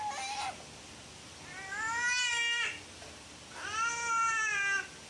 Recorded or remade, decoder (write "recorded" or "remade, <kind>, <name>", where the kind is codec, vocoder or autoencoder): recorded